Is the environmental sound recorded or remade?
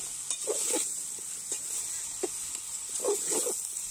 recorded